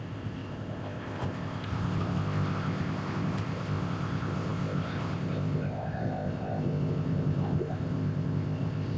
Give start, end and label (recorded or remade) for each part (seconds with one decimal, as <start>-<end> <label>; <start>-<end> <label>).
0.0-9.0 remade